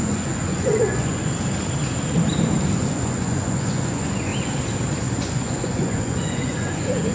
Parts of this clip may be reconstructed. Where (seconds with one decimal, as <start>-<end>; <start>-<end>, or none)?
0.0-1.2; 2.7-4.3; 5.2-7.1